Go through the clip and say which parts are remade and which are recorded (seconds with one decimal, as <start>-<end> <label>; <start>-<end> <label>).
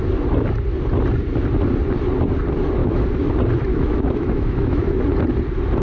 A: 0.0-2.8 recorded; 2.8-3.3 remade; 3.3-3.7 recorded; 3.7-5.0 remade; 5.0-5.8 recorded